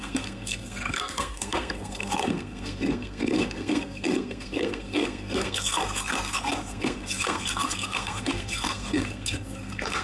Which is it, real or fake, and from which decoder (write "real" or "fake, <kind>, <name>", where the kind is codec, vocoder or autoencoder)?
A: fake, codec, SNAC